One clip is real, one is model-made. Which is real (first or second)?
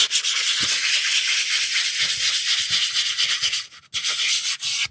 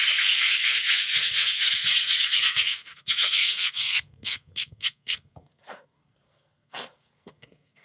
first